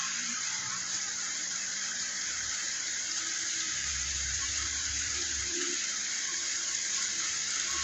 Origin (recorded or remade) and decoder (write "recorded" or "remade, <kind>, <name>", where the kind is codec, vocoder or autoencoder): remade, vocoder, BigVGAN v2